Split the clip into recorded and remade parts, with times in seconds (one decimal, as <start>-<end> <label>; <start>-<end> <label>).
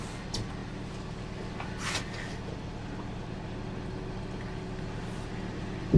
0.0-6.0 recorded